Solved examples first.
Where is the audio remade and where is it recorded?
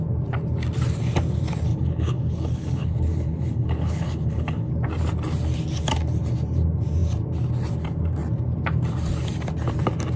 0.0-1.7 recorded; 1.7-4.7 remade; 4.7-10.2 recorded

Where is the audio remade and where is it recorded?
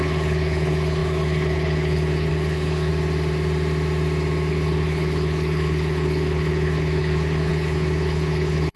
0.0-2.9 remade; 2.9-4.5 recorded; 4.5-8.8 remade